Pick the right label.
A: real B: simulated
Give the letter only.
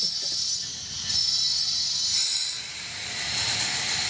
A